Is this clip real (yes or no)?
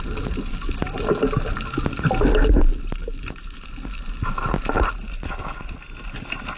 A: yes